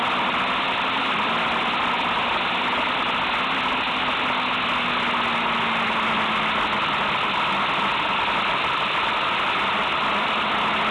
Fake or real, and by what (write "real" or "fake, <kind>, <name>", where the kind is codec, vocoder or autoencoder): real